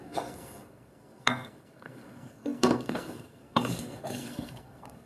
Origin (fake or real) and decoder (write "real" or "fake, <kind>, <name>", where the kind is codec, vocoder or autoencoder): fake, codec, SNAC